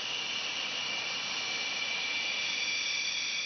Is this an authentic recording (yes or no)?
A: yes